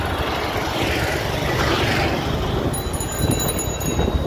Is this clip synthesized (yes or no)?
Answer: no